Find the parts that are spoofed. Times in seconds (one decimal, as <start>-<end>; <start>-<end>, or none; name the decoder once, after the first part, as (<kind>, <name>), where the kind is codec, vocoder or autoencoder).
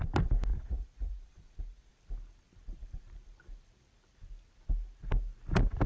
0.5-1.9 (vocoder, Vocos)